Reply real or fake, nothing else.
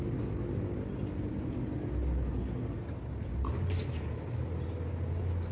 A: real